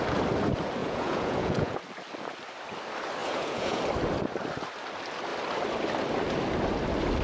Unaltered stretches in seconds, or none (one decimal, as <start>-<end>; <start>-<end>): 0.0-0.8; 1.8-3.2; 3.8-7.2